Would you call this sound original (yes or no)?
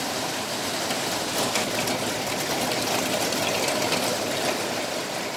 yes